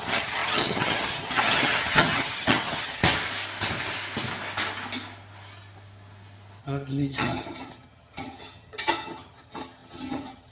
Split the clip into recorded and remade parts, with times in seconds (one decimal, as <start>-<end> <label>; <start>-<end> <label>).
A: 0.0-3.0 remade; 3.0-6.6 recorded; 6.6-10.5 remade